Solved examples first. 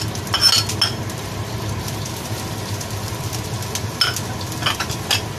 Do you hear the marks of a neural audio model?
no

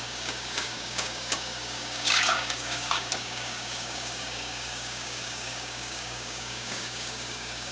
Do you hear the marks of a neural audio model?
yes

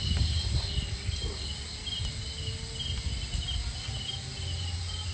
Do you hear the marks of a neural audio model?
no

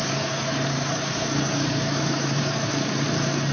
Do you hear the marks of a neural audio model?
yes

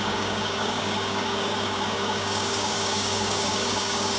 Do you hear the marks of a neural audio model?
yes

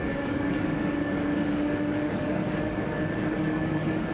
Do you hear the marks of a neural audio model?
yes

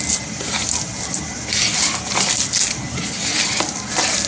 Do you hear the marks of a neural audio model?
no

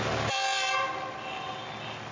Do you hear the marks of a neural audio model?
no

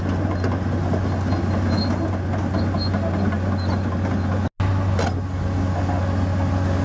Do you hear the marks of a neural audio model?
no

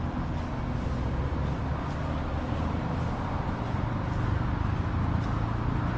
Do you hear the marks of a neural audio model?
no